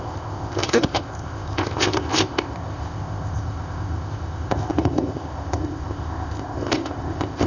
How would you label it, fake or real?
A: fake